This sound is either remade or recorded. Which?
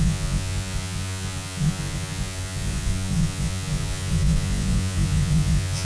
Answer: remade